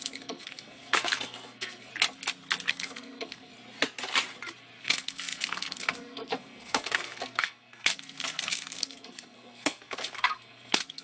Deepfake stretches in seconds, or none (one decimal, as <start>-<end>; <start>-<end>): 0.0-1.9; 2.7-3.5; 4.8-11.0